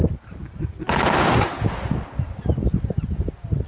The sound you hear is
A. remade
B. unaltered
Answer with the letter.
B